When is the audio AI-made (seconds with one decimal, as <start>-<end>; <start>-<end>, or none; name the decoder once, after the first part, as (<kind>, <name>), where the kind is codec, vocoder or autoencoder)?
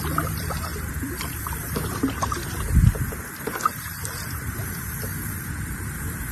0.0-6.3 (vocoder, BigVGAN v2)